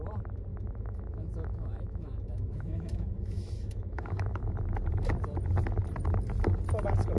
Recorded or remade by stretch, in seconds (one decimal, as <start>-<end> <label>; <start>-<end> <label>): 0.0-0.5 recorded; 0.5-4.4 remade; 4.4-7.2 recorded